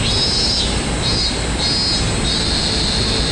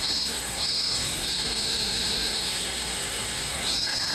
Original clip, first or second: first